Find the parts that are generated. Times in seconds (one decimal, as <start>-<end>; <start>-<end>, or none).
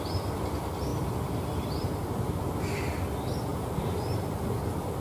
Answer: 3.5-4.3